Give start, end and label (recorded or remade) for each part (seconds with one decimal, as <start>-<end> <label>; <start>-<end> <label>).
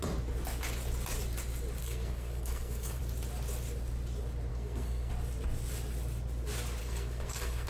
0.0-1.8 recorded; 1.8-3.0 remade; 3.0-4.5 recorded; 4.5-5.1 remade; 5.1-6.8 recorded; 6.8-7.7 remade